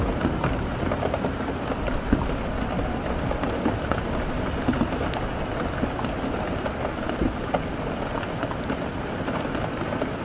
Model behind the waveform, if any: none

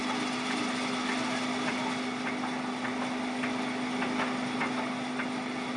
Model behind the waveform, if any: none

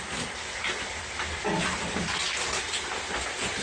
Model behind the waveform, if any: none